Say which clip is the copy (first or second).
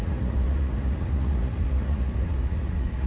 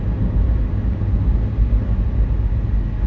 first